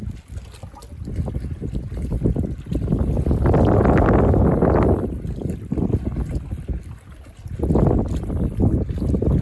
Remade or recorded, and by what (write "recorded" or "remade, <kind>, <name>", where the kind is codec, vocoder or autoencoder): recorded